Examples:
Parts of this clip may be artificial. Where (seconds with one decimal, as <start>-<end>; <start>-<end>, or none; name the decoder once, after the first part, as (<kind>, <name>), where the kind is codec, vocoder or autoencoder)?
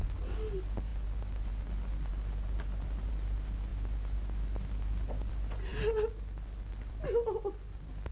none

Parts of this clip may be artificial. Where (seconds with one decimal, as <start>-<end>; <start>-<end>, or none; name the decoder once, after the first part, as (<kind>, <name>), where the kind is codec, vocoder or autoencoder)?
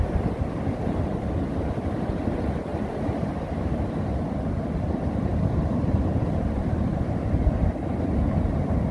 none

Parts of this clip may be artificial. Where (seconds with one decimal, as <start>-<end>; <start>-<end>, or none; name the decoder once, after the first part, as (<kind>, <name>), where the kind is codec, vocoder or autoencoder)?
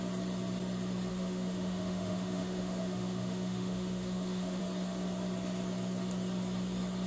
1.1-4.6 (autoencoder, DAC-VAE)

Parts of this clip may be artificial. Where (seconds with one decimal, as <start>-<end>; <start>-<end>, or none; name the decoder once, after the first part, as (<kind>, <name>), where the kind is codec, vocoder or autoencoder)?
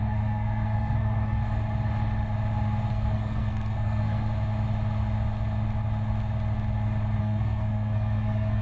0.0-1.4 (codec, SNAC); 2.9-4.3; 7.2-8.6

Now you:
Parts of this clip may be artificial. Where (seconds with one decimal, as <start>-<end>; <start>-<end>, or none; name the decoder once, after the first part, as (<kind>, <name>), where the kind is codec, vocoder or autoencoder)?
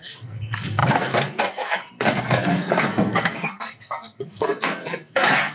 0.0-5.5 (codec, SNAC)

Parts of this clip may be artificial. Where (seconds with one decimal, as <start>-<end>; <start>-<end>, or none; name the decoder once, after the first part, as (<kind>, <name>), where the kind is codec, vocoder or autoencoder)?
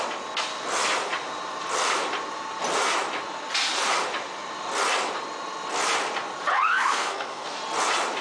6.5-7.6 (codec, SNAC)